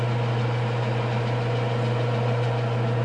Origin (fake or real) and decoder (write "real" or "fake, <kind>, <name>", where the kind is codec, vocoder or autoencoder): real